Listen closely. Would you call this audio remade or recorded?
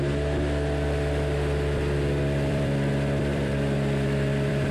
remade